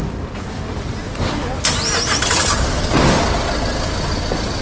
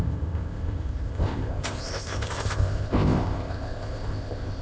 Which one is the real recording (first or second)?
first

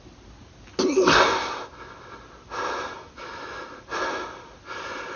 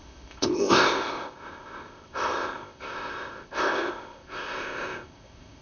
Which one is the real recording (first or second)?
first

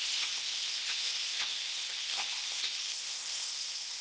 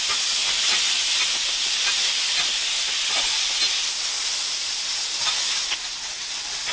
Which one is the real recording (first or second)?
second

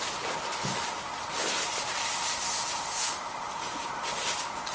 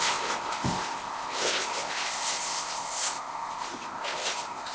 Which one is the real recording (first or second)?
first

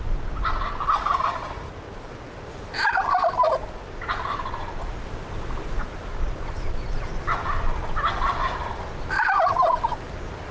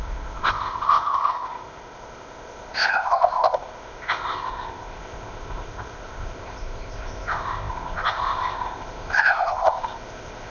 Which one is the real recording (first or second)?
first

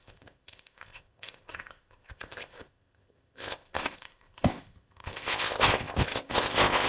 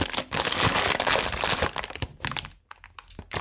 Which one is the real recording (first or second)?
second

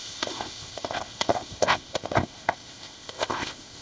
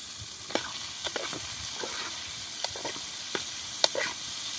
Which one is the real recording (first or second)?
second